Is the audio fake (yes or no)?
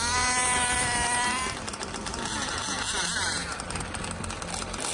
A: no